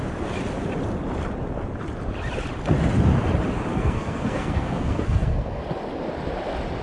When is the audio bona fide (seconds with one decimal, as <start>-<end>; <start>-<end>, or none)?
0.0-3.7; 5.6-6.8